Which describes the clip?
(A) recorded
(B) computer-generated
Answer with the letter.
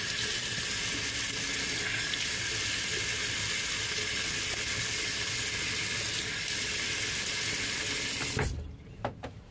A